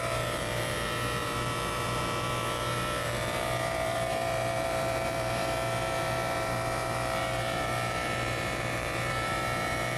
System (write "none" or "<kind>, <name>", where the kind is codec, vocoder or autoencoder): vocoder, BigVGAN v2